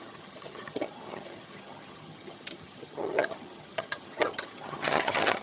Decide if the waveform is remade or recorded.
remade